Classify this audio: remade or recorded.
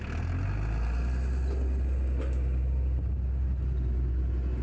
recorded